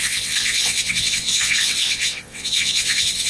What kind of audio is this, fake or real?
fake